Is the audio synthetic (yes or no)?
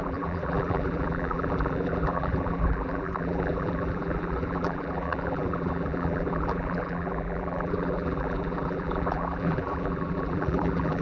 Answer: yes